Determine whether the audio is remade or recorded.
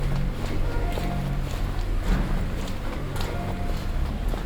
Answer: recorded